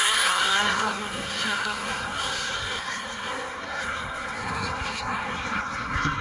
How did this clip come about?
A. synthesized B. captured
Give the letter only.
A